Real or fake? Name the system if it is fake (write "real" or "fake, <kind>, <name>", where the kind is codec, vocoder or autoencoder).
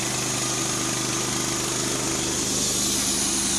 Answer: real